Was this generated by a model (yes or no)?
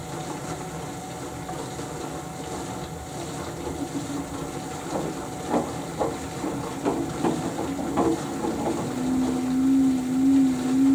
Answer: no